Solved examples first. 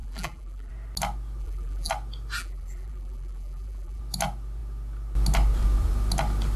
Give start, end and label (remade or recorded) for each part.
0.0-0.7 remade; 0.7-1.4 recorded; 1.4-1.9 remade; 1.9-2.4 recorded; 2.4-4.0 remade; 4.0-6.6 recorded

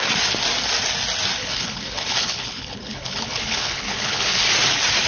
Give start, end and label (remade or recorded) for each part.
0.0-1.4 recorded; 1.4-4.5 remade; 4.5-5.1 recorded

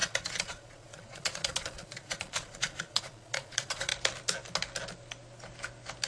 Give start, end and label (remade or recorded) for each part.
0.0-3.9 remade; 3.9-6.1 recorded